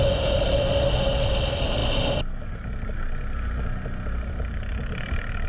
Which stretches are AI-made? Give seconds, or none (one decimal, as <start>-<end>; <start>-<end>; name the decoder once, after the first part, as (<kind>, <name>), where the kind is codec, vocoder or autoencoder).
0.0-1.8 (vocoder, BigVGAN v2); 4.3-5.5